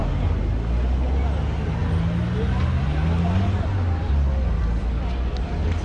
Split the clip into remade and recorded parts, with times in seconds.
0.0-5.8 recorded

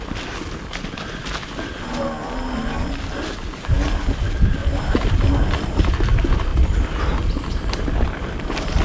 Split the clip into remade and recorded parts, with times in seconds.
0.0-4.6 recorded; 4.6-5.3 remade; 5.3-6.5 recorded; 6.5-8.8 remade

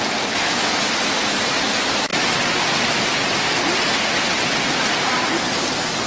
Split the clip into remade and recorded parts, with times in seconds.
0.0-6.1 recorded

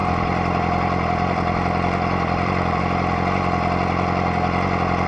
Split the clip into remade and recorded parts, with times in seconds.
0.0-2.8 remade; 2.8-5.1 recorded

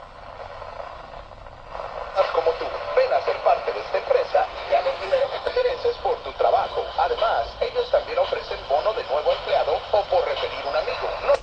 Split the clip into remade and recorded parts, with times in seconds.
0.0-4.3 recorded; 4.3-5.7 remade; 5.7-11.4 recorded